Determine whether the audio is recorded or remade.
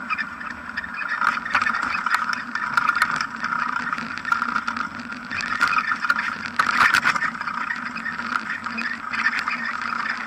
recorded